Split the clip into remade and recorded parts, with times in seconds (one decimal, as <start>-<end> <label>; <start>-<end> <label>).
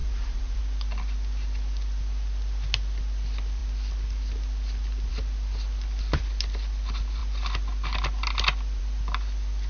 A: 0.0-0.6 remade; 0.6-9.7 recorded